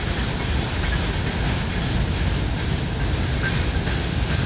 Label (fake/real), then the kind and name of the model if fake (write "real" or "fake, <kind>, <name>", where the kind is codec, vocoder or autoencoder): real